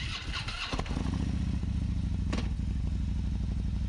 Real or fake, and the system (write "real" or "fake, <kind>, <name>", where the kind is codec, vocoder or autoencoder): real